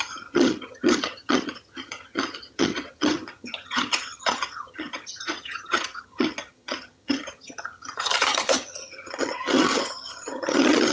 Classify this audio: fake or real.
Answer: fake